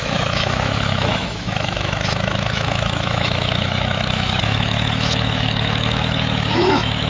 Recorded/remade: remade